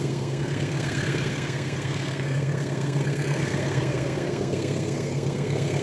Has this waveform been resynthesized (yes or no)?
yes